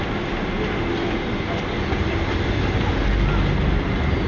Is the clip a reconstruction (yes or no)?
no